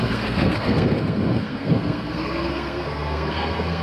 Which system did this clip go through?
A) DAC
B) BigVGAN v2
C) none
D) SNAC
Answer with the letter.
D